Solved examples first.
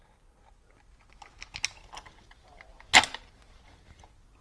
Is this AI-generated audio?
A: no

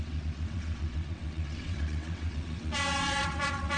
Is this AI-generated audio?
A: yes